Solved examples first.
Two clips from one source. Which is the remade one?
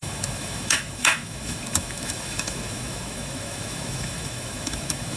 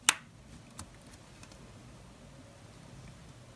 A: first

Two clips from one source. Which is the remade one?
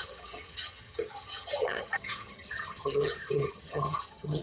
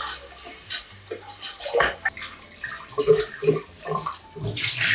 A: first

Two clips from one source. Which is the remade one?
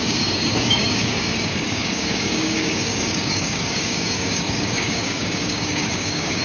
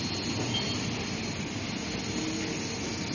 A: first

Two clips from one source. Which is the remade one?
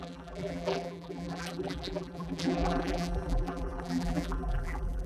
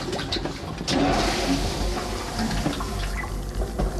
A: first